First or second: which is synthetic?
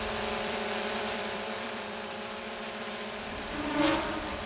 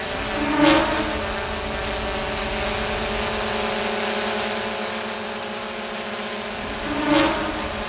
first